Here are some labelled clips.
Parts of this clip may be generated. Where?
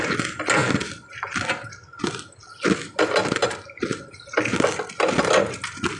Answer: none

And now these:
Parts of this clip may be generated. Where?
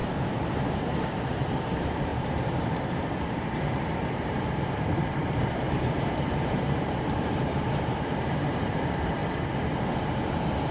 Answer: 0.0-9.2 (vocoder, BigVGAN v2)